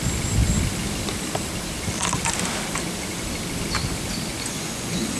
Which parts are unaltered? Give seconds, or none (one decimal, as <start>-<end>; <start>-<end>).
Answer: 0.0-4.3